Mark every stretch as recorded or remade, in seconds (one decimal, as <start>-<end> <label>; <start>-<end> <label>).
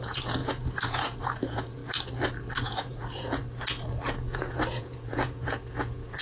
0.0-1.8 remade; 1.8-2.6 recorded; 2.6-3.4 remade; 3.4-4.1 recorded; 4.1-6.2 remade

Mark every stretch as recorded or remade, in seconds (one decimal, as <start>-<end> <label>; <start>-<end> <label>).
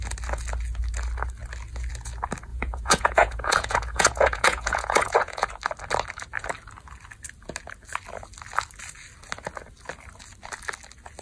0.0-2.5 recorded; 2.5-5.5 remade; 5.5-11.2 recorded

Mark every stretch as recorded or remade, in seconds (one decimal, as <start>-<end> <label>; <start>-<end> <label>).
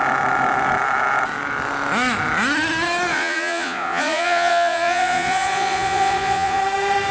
0.0-3.1 recorded; 3.1-6.6 remade; 6.6-7.1 recorded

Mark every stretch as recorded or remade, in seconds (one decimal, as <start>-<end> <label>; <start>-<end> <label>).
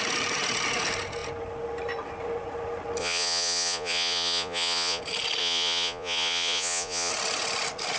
0.0-3.0 recorded; 3.0-5.0 remade; 5.0-5.4 recorded; 5.4-7.1 remade; 7.1-8.0 recorded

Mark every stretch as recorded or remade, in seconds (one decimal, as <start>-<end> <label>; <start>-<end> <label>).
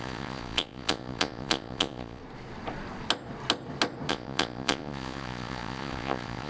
0.0-2.2 remade; 2.2-4.1 recorded; 4.1-6.5 remade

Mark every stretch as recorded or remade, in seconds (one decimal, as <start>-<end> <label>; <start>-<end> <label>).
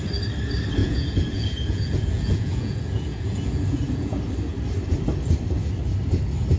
0.0-0.8 recorded; 0.8-4.2 remade; 4.2-6.6 recorded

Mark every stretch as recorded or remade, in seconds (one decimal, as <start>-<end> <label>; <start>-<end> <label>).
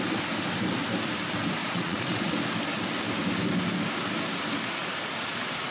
0.0-1.6 recorded; 1.6-2.2 remade; 2.2-5.7 recorded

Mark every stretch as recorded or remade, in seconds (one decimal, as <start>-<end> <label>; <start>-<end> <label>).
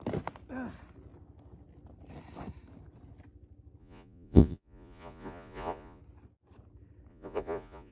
0.0-3.8 recorded; 3.8-6.0 remade; 6.0-7.1 recorded; 7.1-7.9 remade